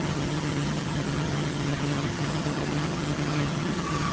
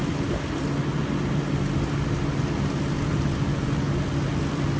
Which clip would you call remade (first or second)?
first